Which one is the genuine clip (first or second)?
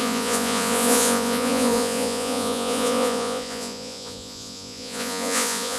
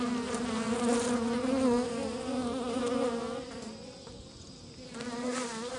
second